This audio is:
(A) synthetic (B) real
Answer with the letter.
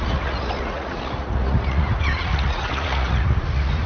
A